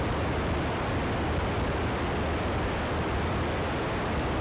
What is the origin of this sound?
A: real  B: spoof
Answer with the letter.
A